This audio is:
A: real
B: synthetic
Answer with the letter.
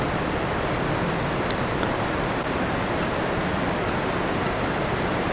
A